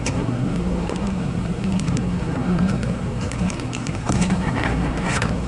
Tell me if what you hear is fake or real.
fake